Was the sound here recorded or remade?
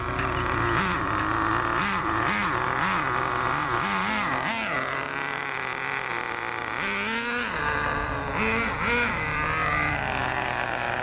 recorded